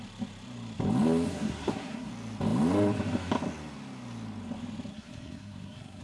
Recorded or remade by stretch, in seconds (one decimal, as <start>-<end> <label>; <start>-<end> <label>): 0.0-1.3 recorded; 1.3-2.1 remade; 2.1-4.9 recorded; 4.9-6.0 remade